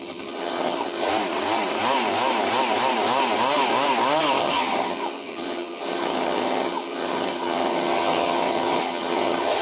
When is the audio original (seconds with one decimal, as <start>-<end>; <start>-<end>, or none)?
1.1-4.4